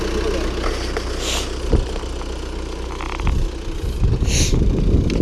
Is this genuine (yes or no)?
yes